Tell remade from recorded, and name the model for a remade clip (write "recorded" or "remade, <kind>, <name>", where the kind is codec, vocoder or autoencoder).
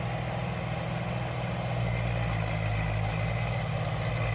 recorded